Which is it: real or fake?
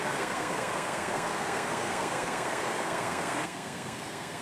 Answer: fake